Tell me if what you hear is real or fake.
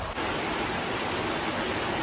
real